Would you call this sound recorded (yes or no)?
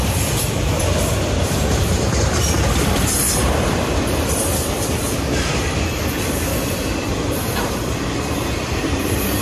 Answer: no